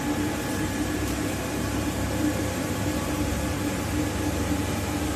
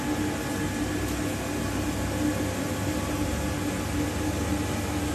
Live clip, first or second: second